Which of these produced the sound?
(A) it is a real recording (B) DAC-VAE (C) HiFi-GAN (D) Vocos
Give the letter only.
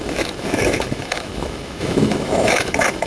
B